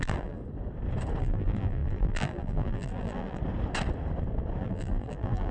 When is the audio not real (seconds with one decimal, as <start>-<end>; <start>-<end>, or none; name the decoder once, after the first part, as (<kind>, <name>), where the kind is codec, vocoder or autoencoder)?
0.0-0.4 (vocoder, BigVGAN v2); 1.2-3.4; 4.6-5.5